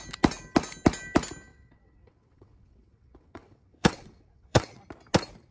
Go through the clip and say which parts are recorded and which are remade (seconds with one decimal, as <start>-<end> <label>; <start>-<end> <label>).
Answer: 0.0-1.5 recorded; 1.5-4.8 remade; 4.8-5.5 recorded